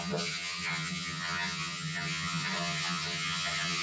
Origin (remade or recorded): remade